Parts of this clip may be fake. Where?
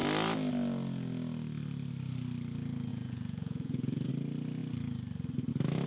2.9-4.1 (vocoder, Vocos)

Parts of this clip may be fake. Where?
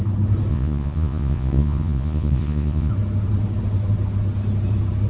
0.5-2.9 (vocoder, Vocos)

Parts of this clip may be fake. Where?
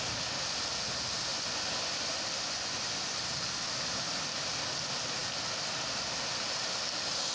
1.3-3.2 (vocoder, Vocos)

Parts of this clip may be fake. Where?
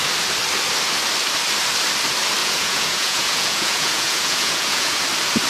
2.4-5.0 (vocoder, Vocos)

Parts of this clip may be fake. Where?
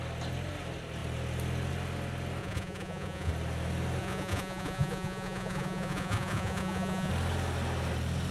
2.4-3.3 (vocoder, Vocos); 4.0-7.1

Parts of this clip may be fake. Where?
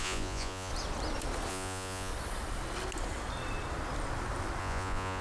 0.0-0.7 (vocoder, Vocos); 1.5-2.1; 4.6-5.2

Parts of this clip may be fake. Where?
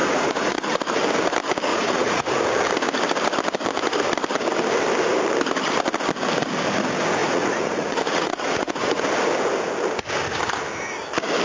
0.0-0.7 (vocoder, Vocos); 1.7-2.3; 7.2-9.0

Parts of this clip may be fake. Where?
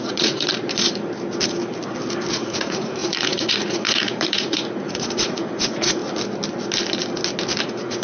0.0-0.5 (vocoder, Vocos); 2.3-6.0; 7.6-8.0